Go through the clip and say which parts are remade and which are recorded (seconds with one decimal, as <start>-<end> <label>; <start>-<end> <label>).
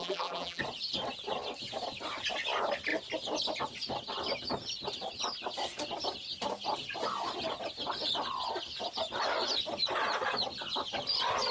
0.0-0.6 remade; 0.6-11.5 recorded